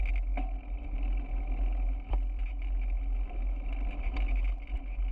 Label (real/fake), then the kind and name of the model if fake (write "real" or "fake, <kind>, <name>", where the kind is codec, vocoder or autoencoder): real